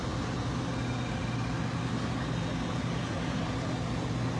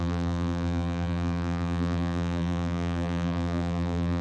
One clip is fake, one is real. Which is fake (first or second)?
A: second